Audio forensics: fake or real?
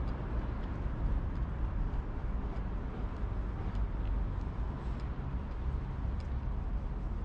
real